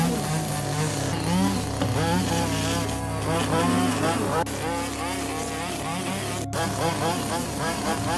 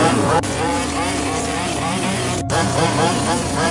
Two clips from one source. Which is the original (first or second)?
first